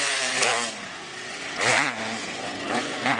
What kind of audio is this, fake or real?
fake